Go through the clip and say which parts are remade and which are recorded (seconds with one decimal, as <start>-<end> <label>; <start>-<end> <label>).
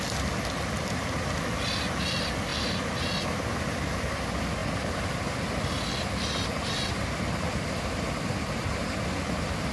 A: 0.0-9.7 recorded